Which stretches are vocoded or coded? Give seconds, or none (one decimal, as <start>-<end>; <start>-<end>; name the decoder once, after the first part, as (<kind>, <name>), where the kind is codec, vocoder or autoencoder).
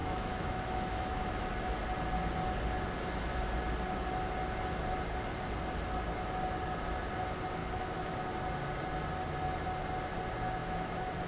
0.0-1.5 (autoencoder, DAC-VAE); 7.6-8.1; 10.6-11.3